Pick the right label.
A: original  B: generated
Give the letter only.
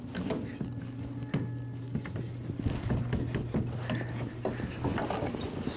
A